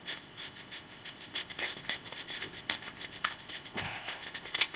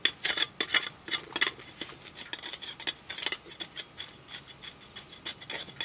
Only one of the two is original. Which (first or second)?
second